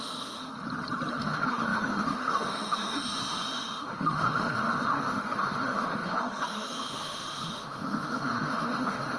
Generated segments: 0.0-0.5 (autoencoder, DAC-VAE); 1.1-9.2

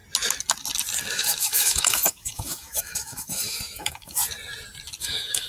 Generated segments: 1.1-4.2 (autoencoder, DAC-VAE); 5.0-5.5

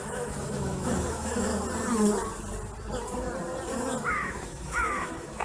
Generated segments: 0.0-1.5 (autoencoder, DAC-VAE); 4.1-5.4